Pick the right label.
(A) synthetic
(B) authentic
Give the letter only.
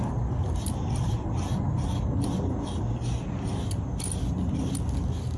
B